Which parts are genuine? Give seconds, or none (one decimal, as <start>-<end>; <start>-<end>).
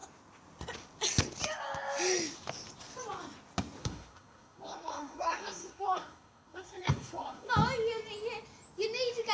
0.0-3.8; 7.5-9.3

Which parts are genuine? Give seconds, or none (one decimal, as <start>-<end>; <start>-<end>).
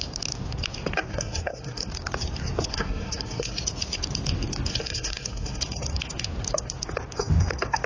0.0-1.1; 1.9-2.7; 3.6-4.7; 5.6-7.9